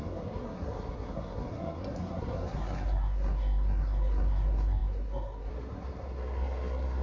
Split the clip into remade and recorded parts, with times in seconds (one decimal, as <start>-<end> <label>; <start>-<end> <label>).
0.0-7.0 remade